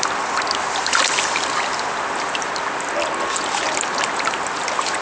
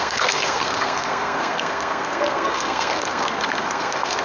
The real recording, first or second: first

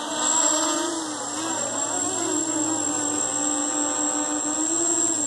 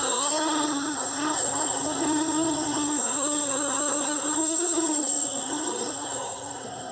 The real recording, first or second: first